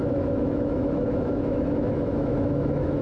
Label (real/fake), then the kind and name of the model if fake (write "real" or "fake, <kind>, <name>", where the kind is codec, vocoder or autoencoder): fake, autoencoder, DAC-VAE